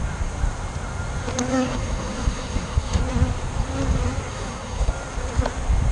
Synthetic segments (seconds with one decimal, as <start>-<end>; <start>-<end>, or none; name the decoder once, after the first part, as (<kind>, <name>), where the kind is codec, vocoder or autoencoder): 1.5-3.0 (codec, SNAC); 4.3-4.9